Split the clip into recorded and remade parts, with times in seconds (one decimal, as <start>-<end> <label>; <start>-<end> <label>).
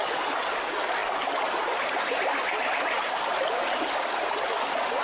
0.0-5.0 recorded